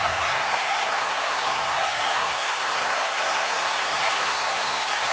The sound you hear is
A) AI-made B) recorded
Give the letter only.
A